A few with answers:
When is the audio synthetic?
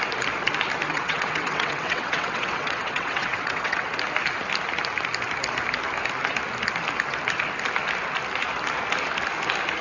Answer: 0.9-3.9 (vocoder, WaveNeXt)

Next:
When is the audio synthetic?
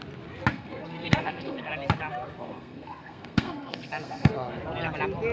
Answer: 0.5-1.7 (codec, SNAC); 2.4-4.6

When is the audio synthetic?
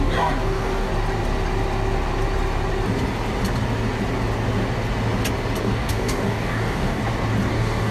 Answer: 0.0-0.9 (codec, DAC); 5.6-7.0; 7.5-7.9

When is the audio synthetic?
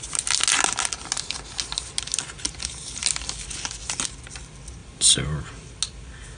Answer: none